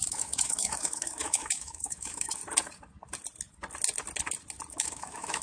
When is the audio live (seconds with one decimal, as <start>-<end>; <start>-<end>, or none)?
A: 2.4-4.7